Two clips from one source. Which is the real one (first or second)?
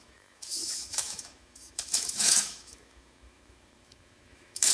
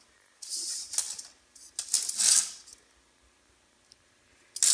second